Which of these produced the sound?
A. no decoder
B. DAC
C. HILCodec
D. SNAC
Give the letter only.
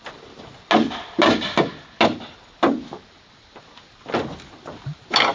A